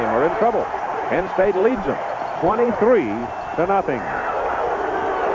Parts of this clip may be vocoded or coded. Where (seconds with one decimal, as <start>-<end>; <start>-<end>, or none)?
0.8-2.7